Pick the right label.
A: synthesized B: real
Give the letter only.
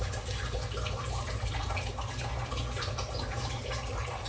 B